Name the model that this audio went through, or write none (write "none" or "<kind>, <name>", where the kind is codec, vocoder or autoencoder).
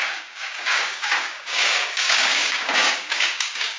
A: codec, DAC